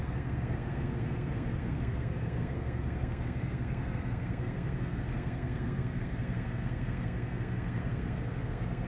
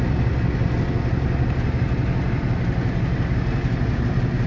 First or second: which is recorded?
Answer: second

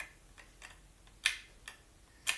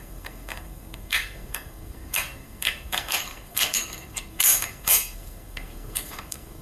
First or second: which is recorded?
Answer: first